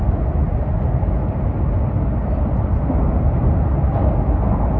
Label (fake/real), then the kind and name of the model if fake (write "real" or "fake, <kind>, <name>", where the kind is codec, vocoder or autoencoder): real